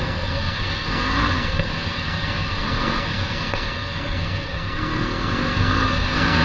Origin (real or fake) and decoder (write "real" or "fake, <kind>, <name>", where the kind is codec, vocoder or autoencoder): fake, codec, SNAC